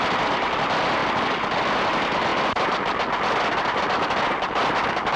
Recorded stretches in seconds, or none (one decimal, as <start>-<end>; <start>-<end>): 0.0-5.2